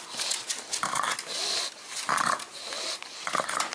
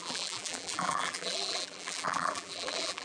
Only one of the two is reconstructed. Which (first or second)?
second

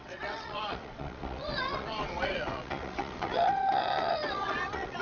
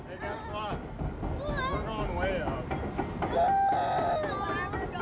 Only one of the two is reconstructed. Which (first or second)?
first